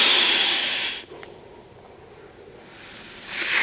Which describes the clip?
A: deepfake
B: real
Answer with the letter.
B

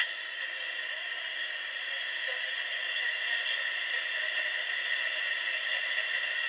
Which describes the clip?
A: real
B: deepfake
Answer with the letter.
A